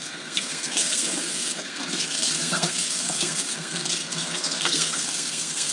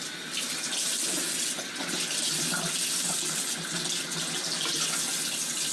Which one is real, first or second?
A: second